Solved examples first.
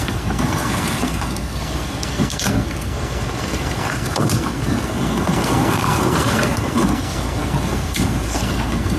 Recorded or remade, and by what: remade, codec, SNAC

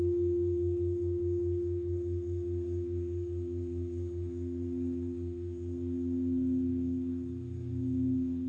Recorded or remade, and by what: remade, codec, SNAC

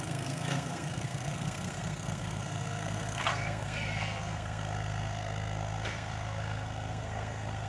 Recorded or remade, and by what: remade, codec, SNAC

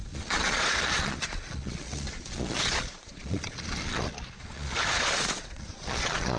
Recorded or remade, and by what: remade, vocoder, Vocos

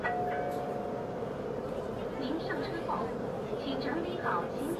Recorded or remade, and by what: recorded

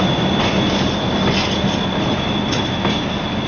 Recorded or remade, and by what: recorded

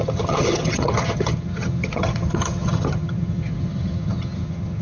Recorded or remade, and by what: remade, vocoder, HiFi-GAN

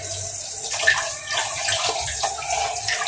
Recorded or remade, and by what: recorded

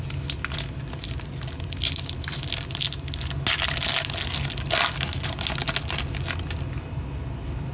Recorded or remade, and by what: recorded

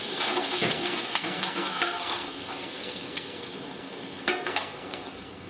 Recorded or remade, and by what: remade, codec, SNAC